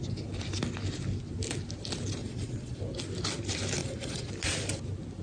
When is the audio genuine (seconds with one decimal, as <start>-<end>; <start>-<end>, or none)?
0.0-2.2; 2.8-3.8; 4.3-5.2